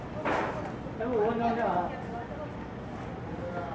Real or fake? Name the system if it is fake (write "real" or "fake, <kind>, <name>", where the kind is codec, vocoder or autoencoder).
real